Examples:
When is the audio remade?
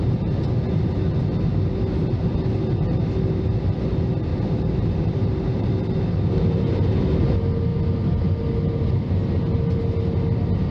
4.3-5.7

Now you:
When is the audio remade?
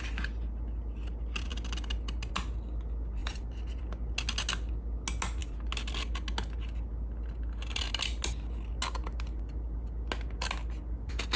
3.2-3.8